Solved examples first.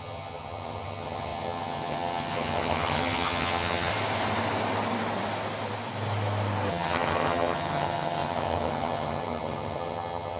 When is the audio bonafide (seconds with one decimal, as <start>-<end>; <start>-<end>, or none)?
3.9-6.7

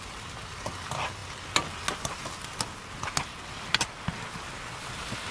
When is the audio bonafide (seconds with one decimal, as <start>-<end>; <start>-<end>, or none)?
0.0-5.3

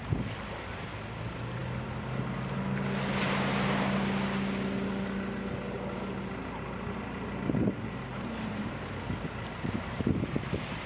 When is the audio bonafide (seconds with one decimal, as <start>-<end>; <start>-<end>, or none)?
0.0-10.9

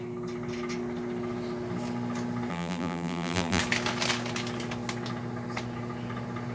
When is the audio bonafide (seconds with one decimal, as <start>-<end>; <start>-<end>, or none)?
0.0-2.5; 3.6-6.5

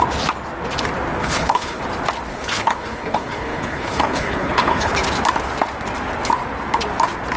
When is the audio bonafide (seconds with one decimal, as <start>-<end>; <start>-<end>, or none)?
0.0-1.2; 1.8-2.3; 4.9-7.4